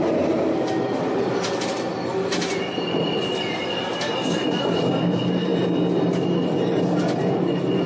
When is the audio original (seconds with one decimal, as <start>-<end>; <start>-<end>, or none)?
0.0-7.9